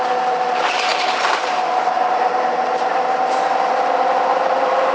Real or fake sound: fake